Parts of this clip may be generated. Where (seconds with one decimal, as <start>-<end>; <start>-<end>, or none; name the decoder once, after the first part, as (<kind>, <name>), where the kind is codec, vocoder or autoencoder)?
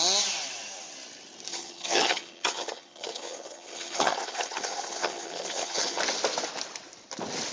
1.5-6.0 (vocoder, HiFi-GAN)